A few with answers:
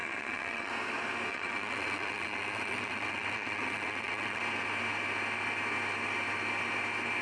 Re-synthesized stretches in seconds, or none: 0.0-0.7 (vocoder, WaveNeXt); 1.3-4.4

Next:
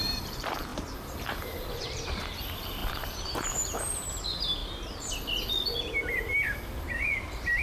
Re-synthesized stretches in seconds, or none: 0.0-4.6 (vocoder, BigVGAN v2); 5.9-7.6

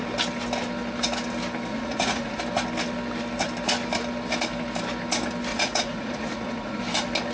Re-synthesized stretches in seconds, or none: 1.7-2.4 (vocoder, Vocos); 5.5-6.8

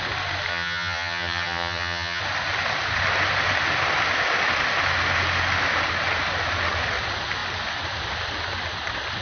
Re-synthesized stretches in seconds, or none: 0.5-2.2 (vocoder, HiFi-GAN)

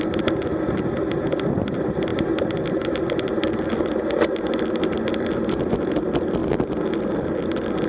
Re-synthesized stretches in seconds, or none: none

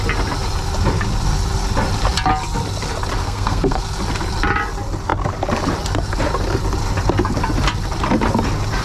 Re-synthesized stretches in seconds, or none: 3.2-3.8 (codec, SNAC)